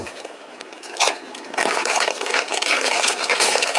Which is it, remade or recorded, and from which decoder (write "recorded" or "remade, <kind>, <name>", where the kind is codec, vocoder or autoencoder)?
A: remade, codec, SNAC